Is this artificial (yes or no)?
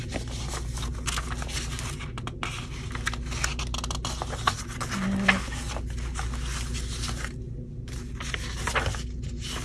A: no